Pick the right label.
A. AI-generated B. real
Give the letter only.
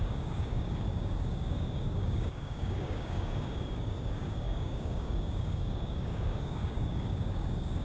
A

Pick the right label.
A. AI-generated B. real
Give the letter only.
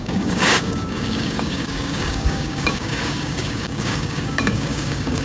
A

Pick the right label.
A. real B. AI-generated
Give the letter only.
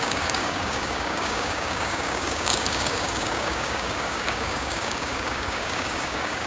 B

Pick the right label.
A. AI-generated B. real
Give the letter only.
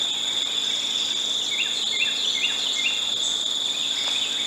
B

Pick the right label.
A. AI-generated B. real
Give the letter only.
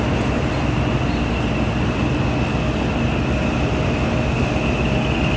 B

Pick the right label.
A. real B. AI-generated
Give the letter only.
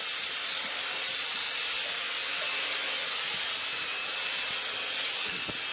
A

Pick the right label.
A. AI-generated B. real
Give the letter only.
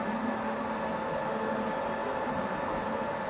B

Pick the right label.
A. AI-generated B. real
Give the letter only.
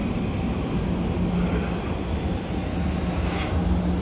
B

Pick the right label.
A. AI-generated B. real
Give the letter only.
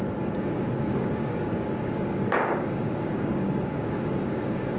A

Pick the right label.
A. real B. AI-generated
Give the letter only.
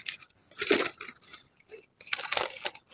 A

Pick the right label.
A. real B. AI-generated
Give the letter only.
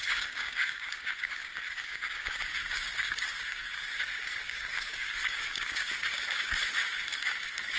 B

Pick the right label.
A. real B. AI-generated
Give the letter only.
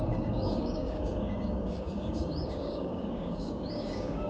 B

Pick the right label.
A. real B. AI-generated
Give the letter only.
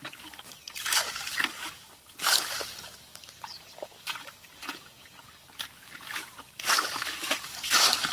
B